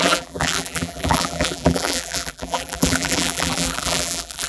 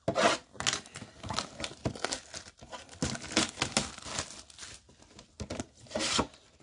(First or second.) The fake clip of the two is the first